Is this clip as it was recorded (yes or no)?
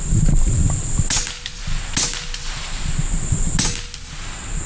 yes